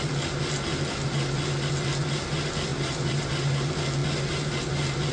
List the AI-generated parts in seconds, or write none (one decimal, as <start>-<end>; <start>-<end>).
2.7-3.4